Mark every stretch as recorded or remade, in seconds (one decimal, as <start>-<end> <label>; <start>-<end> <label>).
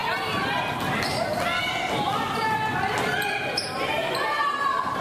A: 0.0-4.4 recorded; 4.4-5.0 remade